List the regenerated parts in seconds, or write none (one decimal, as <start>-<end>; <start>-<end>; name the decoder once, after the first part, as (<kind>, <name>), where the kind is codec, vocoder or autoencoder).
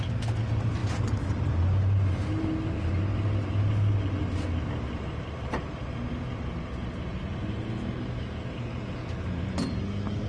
none